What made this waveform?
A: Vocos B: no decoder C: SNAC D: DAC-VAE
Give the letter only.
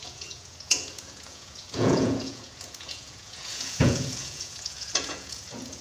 A